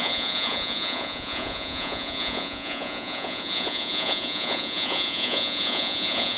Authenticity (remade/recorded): remade